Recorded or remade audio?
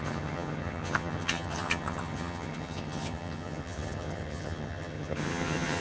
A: remade